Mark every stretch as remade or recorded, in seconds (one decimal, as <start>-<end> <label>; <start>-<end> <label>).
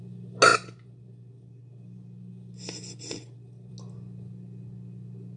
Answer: 0.0-5.4 recorded